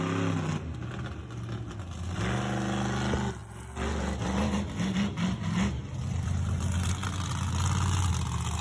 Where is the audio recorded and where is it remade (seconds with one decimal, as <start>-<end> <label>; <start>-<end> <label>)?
0.0-8.6 recorded